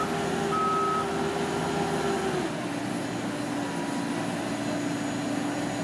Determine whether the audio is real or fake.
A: real